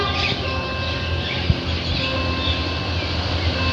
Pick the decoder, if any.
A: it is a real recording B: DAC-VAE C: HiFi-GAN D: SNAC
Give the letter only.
A